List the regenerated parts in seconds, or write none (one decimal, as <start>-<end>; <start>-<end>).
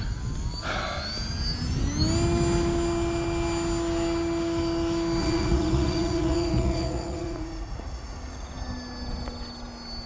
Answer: 5.2-8.5